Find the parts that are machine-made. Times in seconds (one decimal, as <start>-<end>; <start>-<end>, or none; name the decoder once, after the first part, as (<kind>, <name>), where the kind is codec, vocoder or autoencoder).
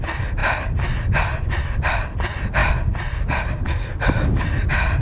none